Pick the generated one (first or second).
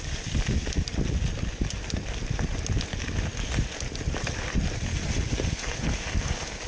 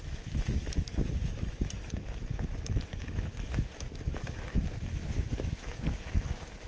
second